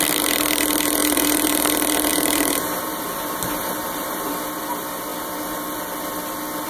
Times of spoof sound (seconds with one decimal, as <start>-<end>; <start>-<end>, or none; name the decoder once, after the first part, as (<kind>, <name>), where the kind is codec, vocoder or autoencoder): 1.0-1.5 (vocoder, BigVGAN v2); 2.1-4.4